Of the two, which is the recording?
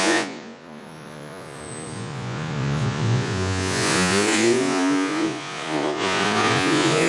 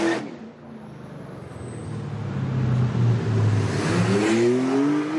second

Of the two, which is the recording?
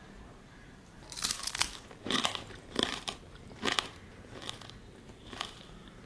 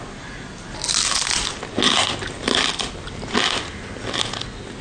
second